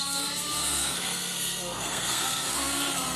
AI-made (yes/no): yes